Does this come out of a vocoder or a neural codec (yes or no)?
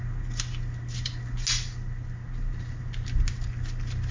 no